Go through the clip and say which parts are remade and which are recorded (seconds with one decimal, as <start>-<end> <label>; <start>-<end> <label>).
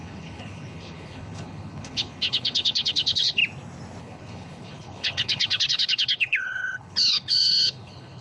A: 0.0-3.4 remade; 3.4-4.0 recorded; 4.0-8.2 remade